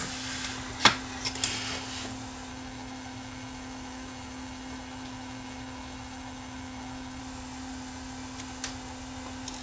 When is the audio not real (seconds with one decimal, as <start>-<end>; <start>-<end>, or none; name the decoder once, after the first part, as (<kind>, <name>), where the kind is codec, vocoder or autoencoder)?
2.5-7.2 (autoencoder, DAC-VAE)